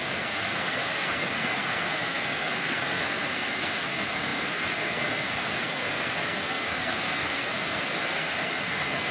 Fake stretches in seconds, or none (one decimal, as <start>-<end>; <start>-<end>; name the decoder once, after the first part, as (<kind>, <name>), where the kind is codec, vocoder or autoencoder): 0.0-9.1 (codec, SNAC)